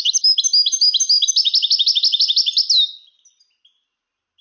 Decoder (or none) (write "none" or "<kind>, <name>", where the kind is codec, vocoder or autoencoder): none